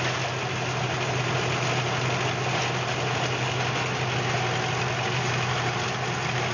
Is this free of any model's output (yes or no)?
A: yes